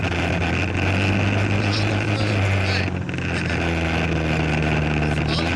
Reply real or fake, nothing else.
real